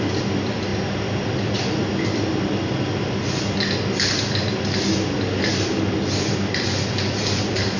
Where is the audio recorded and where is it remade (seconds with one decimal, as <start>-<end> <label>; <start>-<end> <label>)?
0.0-7.8 recorded